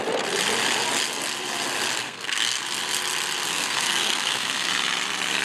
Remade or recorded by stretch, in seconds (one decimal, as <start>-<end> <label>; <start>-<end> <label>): 0.0-2.0 recorded; 2.0-2.6 remade; 2.6-3.5 recorded; 3.5-4.7 remade; 4.7-5.4 recorded